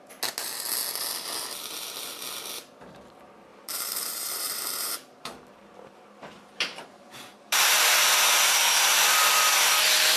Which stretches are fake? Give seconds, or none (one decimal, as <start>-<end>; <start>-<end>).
3.5-7.9